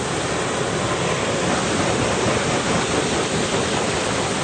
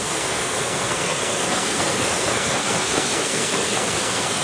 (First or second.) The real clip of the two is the first